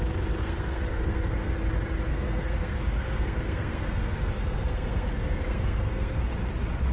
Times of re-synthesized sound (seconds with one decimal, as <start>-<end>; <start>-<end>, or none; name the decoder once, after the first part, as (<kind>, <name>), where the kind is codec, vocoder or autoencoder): 0.4-1.5 (codec, SNAC); 2.1-6.2